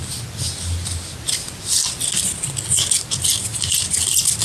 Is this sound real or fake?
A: real